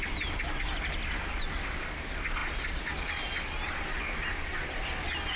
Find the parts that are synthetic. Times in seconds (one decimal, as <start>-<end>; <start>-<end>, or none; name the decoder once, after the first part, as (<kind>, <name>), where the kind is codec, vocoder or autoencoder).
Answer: none